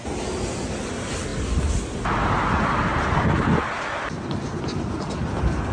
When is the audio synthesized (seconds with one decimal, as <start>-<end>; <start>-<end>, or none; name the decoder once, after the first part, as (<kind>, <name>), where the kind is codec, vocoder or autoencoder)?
none